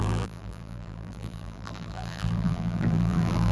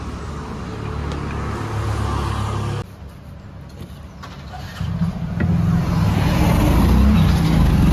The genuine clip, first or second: second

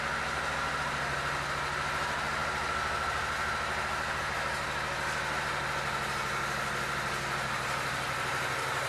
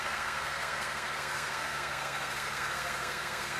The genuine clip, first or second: first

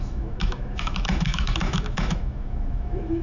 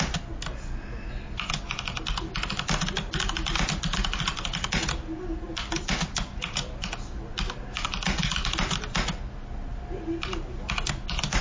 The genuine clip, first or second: second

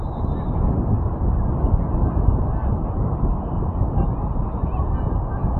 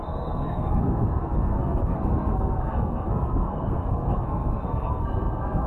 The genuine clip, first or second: first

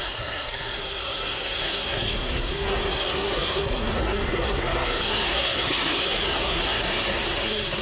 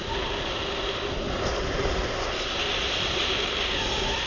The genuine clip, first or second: second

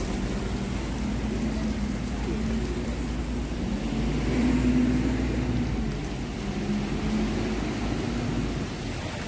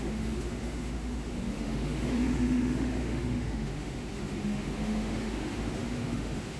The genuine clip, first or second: first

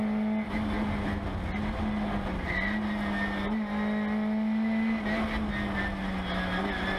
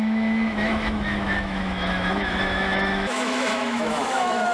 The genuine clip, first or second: first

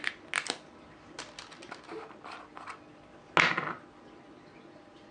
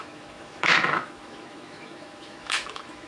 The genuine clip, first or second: first